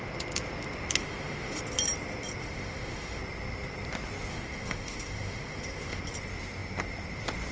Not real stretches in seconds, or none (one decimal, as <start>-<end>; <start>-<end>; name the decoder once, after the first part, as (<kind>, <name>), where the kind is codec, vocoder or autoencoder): 1.0-1.6 (autoencoder, DAC-VAE); 2.4-3.2; 4.3-6.0